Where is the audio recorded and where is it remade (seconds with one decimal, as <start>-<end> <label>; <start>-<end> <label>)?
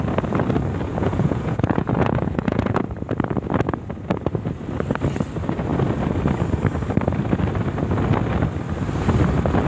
0.0-0.9 recorded; 0.9-2.8 remade; 2.8-9.7 recorded